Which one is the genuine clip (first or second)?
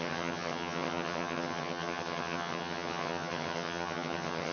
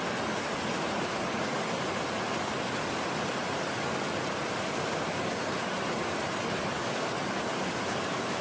second